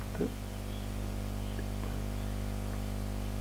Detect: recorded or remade recorded